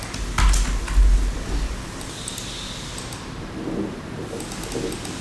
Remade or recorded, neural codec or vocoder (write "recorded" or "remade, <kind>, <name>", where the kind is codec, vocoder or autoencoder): recorded